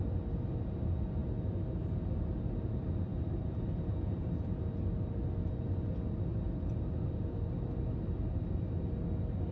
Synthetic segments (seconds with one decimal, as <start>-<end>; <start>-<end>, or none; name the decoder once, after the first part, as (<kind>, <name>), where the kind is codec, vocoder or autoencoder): none